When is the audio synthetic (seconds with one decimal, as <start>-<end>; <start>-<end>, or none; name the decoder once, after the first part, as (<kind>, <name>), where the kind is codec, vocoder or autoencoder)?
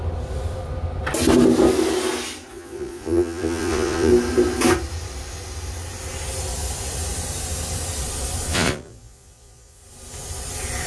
2.5-4.1 (vocoder, Vocos); 8.5-9.8